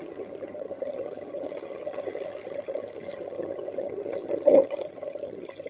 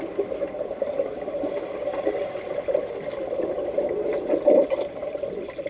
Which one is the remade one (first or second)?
first